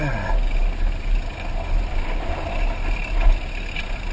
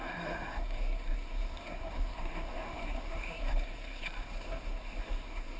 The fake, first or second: second